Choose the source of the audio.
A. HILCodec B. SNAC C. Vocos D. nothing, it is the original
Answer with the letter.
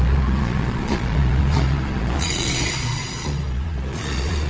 C